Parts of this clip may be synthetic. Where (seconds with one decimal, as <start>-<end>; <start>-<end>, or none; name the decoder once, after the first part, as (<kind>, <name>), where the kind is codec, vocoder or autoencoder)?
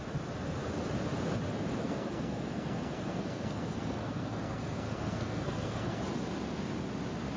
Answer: 1.8-6.0 (codec, SNAC)